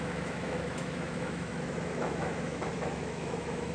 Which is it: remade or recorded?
remade